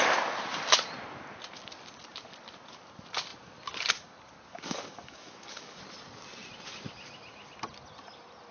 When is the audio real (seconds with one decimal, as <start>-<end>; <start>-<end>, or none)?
0.0-4.5; 5.8-8.5